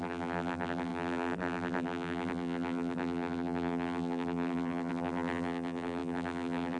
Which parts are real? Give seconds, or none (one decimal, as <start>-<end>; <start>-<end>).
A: none